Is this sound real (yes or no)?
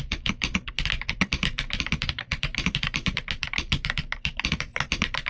no